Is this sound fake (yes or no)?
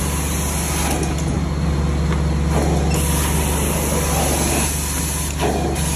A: no